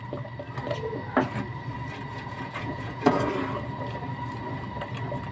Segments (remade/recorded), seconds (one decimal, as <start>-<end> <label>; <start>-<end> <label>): 0.0-2.1 recorded; 2.1-3.2 remade; 3.2-5.3 recorded